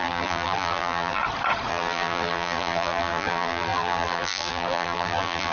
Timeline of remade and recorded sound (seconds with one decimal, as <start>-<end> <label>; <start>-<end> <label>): 0.0-1.2 remade; 1.2-1.7 recorded; 1.7-5.5 remade